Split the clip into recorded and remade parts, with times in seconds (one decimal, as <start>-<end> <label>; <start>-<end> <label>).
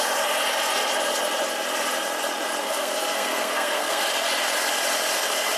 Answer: 0.0-2.6 recorded; 2.6-4.0 remade; 4.0-5.6 recorded